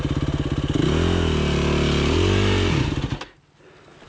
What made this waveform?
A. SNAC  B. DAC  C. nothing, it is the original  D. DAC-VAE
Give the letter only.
C